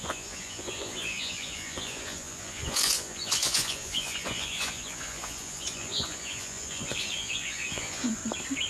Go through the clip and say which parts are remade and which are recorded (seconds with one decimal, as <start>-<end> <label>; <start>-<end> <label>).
0.0-8.2 remade; 8.2-8.7 recorded